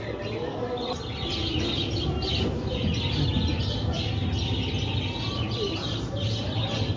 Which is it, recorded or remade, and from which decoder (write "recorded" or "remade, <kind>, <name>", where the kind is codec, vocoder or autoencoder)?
recorded